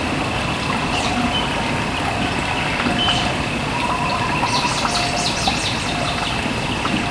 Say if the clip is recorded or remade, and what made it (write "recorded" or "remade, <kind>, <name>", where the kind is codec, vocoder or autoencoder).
recorded